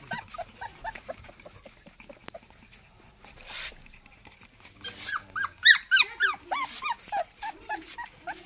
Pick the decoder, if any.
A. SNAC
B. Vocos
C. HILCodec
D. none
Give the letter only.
D